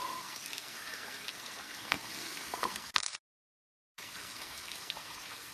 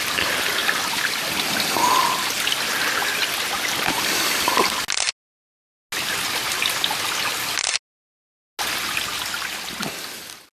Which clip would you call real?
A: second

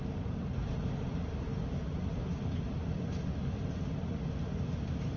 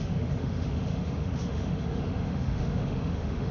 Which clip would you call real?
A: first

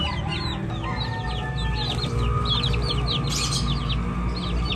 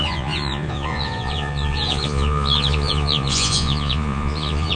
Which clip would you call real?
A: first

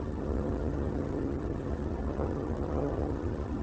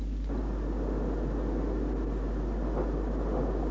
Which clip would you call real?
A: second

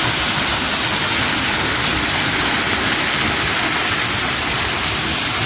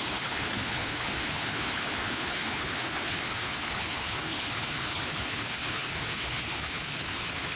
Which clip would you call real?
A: first